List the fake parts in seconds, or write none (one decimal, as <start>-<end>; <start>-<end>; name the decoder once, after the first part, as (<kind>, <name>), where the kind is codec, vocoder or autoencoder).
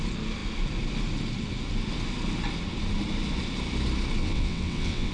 4.2-5.1 (vocoder, WaveNeXt)